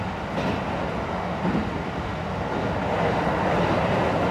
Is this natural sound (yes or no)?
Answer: no